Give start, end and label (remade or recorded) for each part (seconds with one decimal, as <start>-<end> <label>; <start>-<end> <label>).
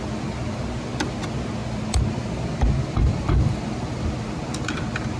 0.0-5.2 recorded